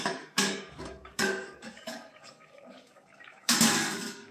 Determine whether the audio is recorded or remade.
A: remade